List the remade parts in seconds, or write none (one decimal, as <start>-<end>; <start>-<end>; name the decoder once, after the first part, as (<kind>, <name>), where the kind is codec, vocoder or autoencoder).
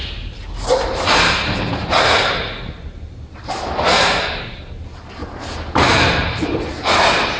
none